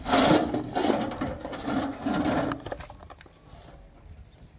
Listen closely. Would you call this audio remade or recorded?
recorded